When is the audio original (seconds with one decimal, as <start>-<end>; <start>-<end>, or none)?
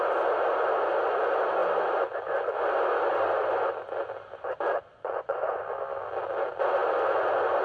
0.0-4.9; 5.6-7.6